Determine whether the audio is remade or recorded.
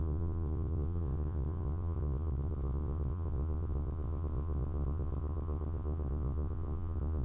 remade